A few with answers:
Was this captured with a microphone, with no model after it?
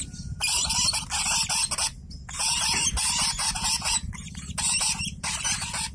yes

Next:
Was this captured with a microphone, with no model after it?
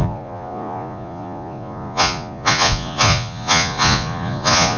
no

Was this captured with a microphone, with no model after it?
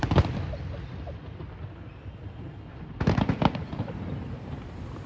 yes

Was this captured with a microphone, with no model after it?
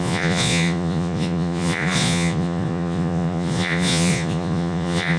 no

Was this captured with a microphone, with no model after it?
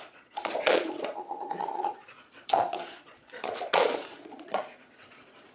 no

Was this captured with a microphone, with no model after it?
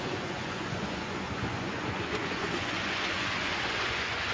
no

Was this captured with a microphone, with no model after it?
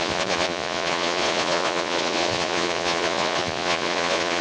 no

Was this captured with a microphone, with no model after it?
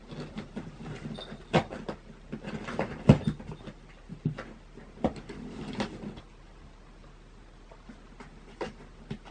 yes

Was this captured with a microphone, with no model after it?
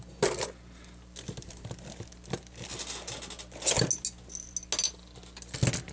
yes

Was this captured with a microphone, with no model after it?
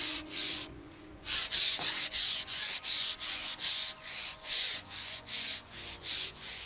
no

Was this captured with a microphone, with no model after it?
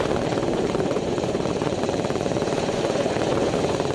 no